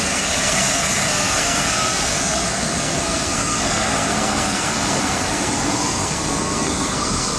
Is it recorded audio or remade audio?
remade